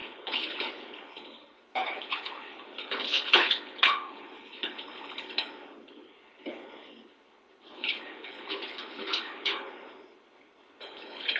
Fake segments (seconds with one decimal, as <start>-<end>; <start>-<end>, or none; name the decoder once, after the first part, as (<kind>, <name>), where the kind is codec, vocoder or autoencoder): 0.0-11.4 (codec, HILCodec)